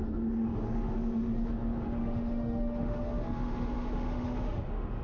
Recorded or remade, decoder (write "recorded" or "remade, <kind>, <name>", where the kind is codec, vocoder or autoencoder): remade, autoencoder, DAC-VAE